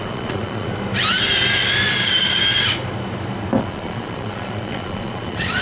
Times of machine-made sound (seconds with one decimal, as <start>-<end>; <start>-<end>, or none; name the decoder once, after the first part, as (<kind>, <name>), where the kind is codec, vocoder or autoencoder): 0.0-0.7 (vocoder, Vocos); 3.6-5.6